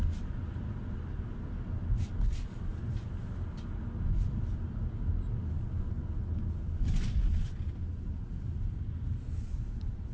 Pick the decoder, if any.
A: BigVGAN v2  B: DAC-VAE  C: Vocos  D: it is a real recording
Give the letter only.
D